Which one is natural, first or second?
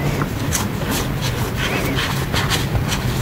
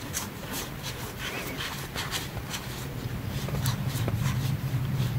first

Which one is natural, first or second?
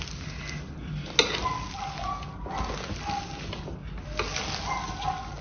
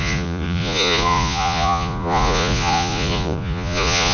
first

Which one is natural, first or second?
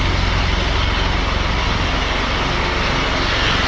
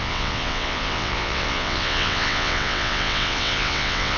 first